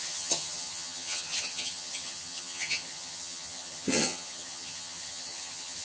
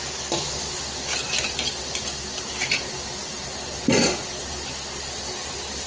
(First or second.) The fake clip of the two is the first